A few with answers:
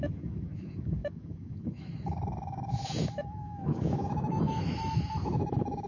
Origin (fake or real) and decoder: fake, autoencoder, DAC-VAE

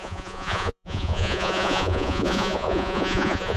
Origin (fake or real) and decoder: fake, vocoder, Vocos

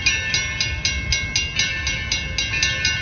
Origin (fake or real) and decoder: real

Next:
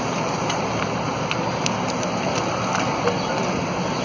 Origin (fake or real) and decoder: real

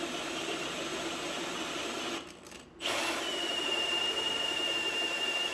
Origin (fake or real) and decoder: real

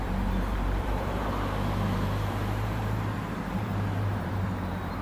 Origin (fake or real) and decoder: fake, vocoder, BigVGAN v2